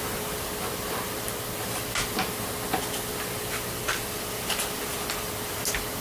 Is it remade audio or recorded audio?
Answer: recorded